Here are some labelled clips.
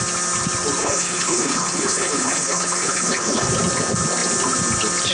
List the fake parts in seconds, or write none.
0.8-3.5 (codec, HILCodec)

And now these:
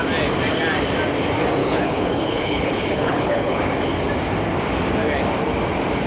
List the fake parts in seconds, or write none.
1.6-3.6 (codec, HILCodec)

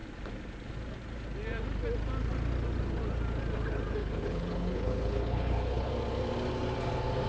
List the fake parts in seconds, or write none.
4.0-5.9 (codec, HILCodec)

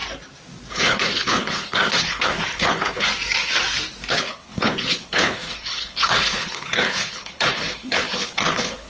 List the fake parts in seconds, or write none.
0.7-3.1 (codec, HILCodec); 4.1-8.9

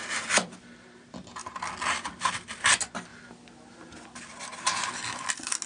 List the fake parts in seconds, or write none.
none